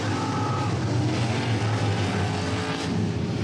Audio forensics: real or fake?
real